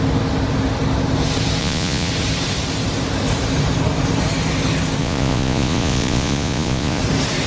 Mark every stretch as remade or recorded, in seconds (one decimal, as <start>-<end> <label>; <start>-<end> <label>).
0.0-1.6 recorded; 1.6-2.1 remade; 2.1-5.0 recorded; 5.0-7.0 remade; 7.0-7.5 recorded